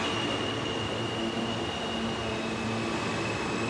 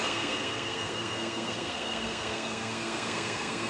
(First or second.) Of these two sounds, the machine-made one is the second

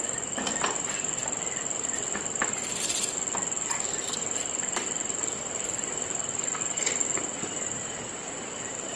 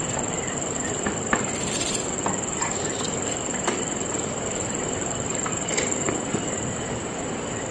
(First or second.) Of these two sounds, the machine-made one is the second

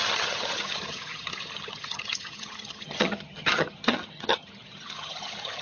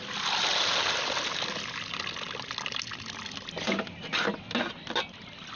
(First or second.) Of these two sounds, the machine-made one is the first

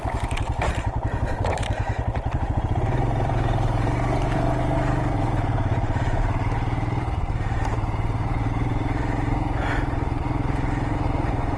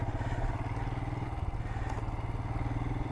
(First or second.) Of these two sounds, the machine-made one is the first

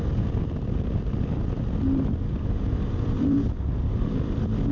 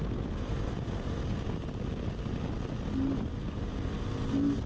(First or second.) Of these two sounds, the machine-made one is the first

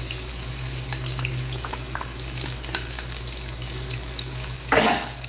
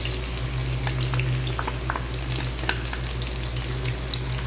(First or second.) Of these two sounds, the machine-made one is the first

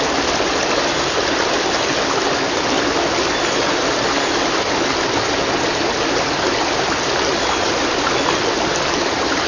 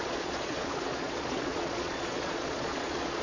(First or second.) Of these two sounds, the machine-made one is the second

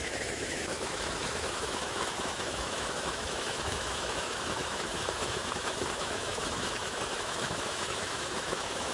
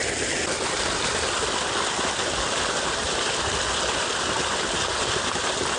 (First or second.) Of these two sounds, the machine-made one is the first